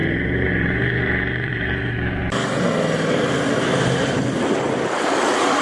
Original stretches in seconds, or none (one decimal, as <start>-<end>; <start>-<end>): 2.2-3.2